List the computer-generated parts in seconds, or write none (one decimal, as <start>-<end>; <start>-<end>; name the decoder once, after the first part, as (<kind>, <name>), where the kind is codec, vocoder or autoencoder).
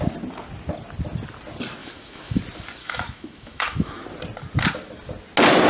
1.8-2.4 (autoencoder, DAC-VAE); 2.8-4.0